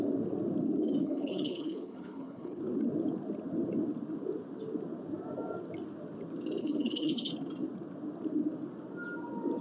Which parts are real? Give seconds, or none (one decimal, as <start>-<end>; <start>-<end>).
0.0-1.0; 2.6-6.6; 7.3-9.6